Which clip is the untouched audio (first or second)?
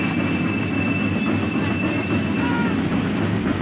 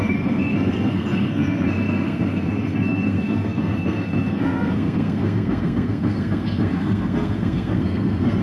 first